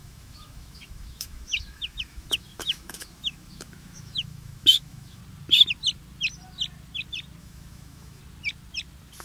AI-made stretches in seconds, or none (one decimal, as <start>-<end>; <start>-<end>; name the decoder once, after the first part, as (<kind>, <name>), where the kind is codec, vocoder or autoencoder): 0.0-5.2 (autoencoder, DAC-VAE); 7.4-8.2